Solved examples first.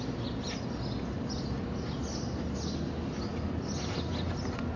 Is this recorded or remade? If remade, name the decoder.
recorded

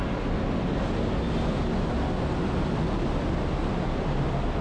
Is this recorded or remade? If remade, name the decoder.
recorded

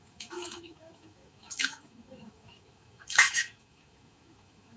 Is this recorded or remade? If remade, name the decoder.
remade, autoencoder, DAC-VAE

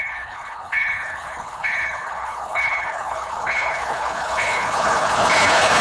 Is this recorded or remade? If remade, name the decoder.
remade, codec, HILCodec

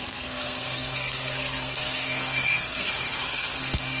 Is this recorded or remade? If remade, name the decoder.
remade, codec, SNAC